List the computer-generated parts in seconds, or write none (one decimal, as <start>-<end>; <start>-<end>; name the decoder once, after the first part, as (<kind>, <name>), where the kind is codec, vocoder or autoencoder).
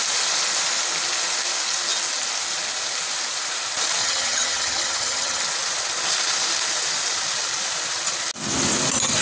4.0-5.4 (vocoder, HiFi-GAN)